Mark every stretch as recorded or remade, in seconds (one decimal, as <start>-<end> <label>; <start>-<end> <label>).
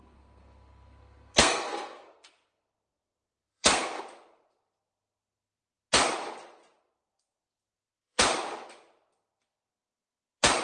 0.0-4.0 remade; 4.0-6.8 recorded; 6.8-8.2 remade; 8.2-10.6 recorded